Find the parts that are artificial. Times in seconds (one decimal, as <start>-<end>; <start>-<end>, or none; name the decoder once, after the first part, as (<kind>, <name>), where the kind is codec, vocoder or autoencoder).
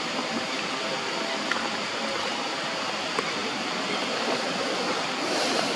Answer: none